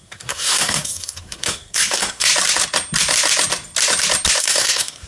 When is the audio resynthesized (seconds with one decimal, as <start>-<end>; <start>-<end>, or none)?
0.0-2.3; 4.4-5.1